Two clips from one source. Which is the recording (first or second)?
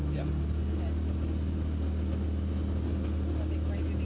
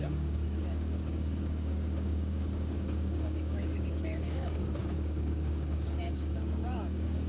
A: first